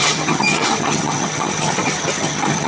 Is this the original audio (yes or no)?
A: no